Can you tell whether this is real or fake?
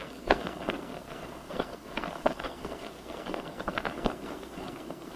fake